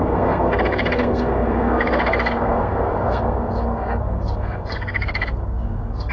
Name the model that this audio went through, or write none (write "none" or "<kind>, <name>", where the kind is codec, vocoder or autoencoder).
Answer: codec, SNAC